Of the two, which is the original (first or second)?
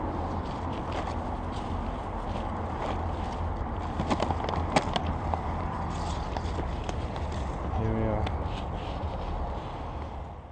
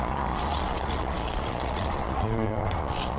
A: first